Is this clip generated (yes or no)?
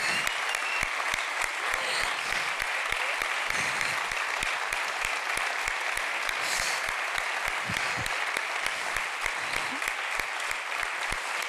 no